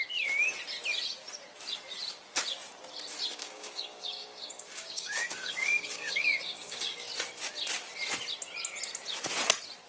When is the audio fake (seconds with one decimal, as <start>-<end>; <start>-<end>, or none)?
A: 3.3-7.1